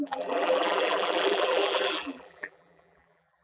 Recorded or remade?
remade